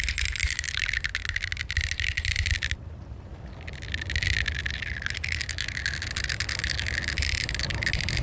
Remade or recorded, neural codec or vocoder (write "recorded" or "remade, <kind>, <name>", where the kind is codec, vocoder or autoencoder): recorded